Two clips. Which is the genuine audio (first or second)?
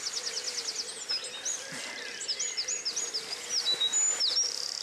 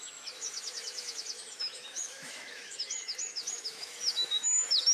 first